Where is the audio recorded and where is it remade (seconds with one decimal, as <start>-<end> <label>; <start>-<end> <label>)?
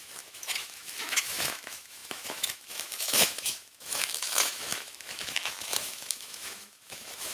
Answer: 0.0-7.3 remade